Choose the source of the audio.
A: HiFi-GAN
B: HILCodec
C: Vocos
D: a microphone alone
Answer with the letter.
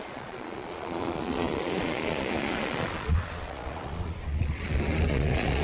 C